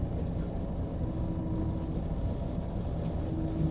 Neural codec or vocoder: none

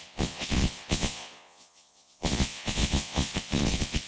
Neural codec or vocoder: vocoder, Vocos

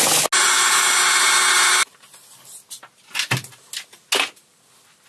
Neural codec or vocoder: none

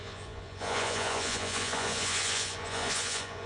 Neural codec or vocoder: vocoder, Vocos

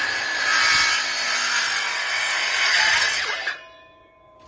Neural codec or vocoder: none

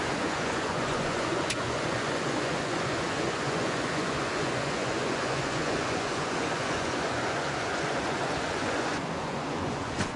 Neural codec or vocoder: vocoder, Vocos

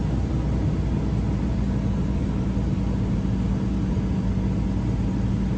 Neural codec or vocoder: none